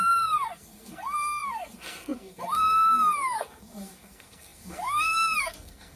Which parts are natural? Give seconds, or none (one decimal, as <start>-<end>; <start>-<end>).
none